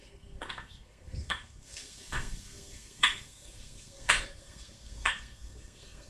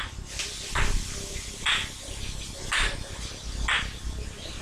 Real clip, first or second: second